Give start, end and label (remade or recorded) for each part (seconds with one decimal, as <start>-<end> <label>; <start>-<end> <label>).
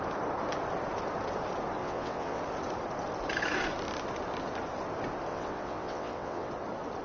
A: 0.0-1.8 recorded; 1.8-2.4 remade; 2.4-5.3 recorded; 5.3-6.5 remade; 6.5-7.0 recorded